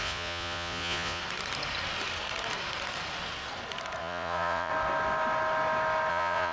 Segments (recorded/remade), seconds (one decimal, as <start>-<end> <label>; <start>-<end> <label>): 0.0-1.2 remade; 1.2-4.0 recorded; 4.0-4.7 remade; 4.7-6.1 recorded; 6.1-6.5 remade